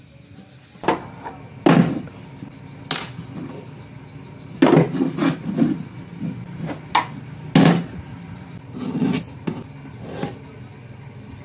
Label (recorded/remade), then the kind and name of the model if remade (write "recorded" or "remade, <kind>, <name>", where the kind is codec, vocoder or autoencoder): recorded